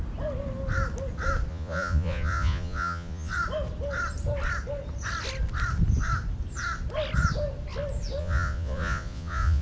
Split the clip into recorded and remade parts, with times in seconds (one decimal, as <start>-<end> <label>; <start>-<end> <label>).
0.0-1.5 recorded; 1.5-3.3 remade; 3.3-8.2 recorded; 8.2-9.6 remade